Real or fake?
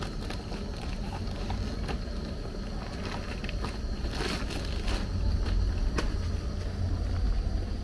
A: real